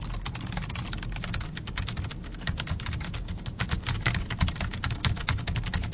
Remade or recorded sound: recorded